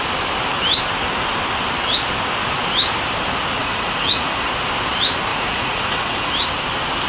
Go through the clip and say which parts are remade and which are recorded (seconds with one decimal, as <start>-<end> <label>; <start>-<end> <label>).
0.0-3.6 recorded; 3.6-4.5 remade; 4.5-5.3 recorded; 5.3-6.3 remade; 6.3-7.1 recorded